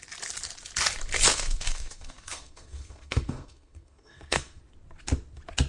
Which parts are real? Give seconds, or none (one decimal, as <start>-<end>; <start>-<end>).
0.0-1.3; 4.6-5.7